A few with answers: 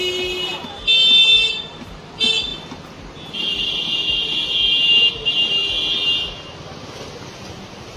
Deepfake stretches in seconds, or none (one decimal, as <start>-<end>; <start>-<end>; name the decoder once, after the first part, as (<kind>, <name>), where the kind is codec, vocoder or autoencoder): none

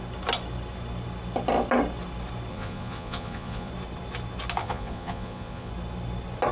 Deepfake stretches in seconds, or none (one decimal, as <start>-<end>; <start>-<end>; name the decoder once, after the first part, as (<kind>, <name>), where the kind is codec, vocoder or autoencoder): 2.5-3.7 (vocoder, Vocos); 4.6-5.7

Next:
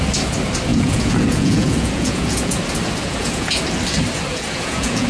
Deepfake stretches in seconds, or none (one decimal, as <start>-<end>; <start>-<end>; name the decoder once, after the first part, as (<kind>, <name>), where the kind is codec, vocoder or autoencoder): 0.7-2.6 (vocoder, Vocos); 3.0-3.6; 4.3-5.1